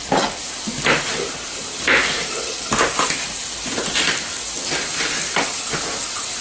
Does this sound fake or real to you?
real